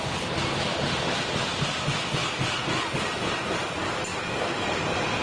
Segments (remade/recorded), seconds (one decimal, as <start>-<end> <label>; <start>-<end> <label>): 0.0-4.1 recorded; 4.1-5.2 remade